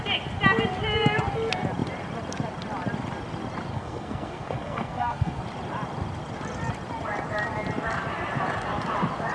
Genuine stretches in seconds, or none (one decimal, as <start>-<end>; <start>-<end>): 0.0-3.7; 5.4-9.3